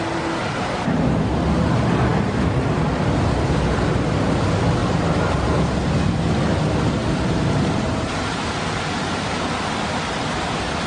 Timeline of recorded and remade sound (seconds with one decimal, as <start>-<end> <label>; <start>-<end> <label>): 0.0-0.4 recorded; 0.4-1.0 remade; 1.0-4.8 recorded; 4.8-8.8 remade; 8.8-10.9 recorded